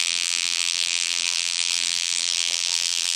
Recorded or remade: remade